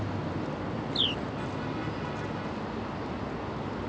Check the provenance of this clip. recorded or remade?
recorded